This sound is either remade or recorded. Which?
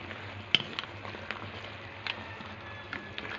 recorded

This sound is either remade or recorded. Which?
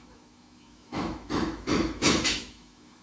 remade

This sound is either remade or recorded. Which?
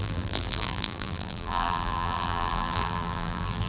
remade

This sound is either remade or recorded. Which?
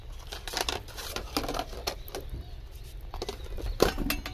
recorded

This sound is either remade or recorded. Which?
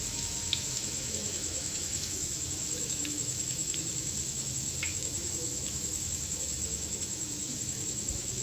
remade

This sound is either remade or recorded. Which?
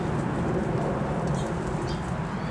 recorded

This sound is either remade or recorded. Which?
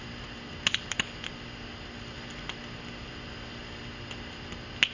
recorded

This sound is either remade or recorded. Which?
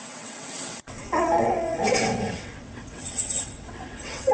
remade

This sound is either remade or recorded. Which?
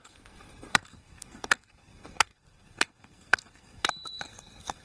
remade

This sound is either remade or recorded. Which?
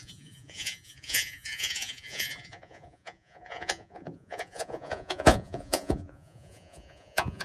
remade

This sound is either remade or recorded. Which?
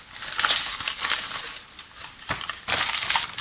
recorded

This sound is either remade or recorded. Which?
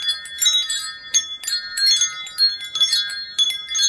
recorded